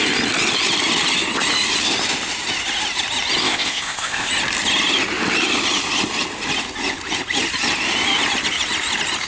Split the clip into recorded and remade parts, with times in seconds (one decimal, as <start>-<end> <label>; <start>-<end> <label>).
0.0-3.4 recorded; 3.4-4.3 remade; 4.3-9.3 recorded